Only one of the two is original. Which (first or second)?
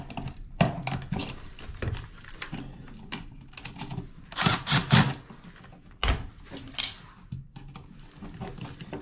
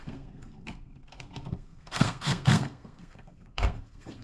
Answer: first